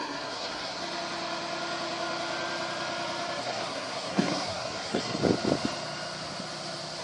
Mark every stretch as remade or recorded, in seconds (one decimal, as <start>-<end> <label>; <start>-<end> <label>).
0.0-0.8 remade; 0.8-3.4 recorded; 3.4-5.2 remade; 5.2-7.0 recorded

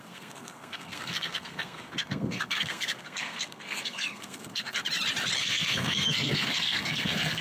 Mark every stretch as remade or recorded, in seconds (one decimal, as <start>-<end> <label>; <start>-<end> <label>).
0.0-4.8 remade; 4.8-5.4 recorded; 5.4-7.4 remade

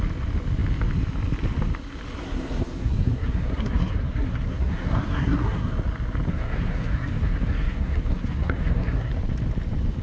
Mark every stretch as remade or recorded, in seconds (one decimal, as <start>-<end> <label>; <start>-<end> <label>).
0.0-2.2 recorded; 2.2-5.7 remade; 5.7-6.3 recorded; 6.3-9.1 remade; 9.1-10.0 recorded

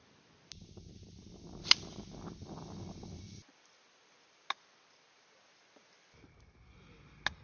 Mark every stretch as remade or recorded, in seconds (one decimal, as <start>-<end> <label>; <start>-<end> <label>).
0.0-7.4 recorded

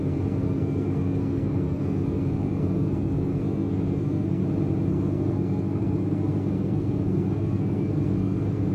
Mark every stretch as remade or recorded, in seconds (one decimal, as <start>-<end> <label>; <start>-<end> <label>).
0.0-4.4 remade; 4.4-4.9 recorded; 4.9-8.7 remade

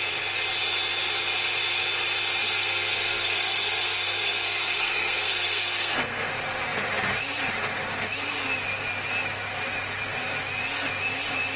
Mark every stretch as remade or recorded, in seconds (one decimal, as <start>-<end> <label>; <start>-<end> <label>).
0.0-2.4 recorded; 2.4-6.3 remade; 6.3-11.6 recorded